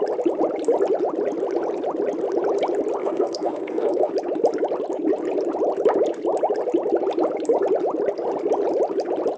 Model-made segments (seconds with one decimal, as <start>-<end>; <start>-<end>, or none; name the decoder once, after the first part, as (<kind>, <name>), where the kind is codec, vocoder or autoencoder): 3.0-4.1 (codec, SNAC)